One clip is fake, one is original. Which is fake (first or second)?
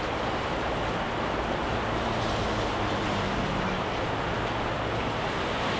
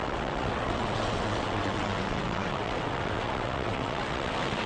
second